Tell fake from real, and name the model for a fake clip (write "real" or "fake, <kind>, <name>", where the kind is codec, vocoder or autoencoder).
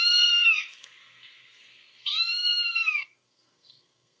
fake, codec, SNAC